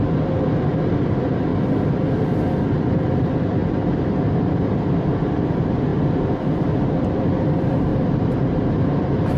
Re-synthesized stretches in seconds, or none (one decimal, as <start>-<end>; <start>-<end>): 0.0-1.5; 3.2-5.9; 7.0-9.4